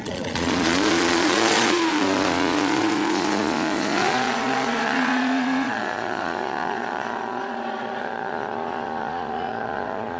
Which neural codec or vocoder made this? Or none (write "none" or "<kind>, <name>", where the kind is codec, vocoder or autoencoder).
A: vocoder, Vocos